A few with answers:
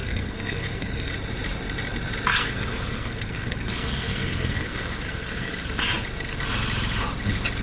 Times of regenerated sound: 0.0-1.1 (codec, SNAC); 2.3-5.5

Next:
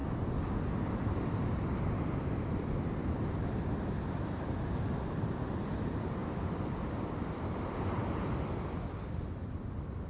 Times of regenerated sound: none

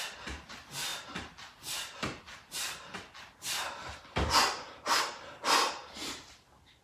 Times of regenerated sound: none

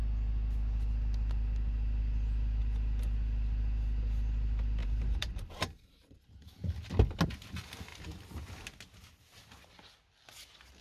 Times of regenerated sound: 4.8-6.5 (vocoder, BigVGAN v2)